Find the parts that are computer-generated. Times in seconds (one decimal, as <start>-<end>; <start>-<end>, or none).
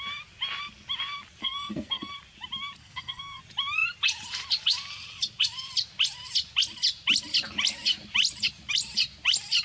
1.4-2.1; 2.8-3.4